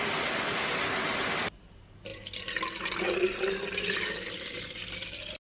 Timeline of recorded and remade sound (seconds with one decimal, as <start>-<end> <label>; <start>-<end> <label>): 0.0-5.4 recorded